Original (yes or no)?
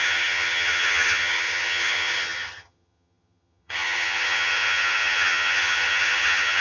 no